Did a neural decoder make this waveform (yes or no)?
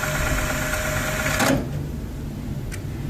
no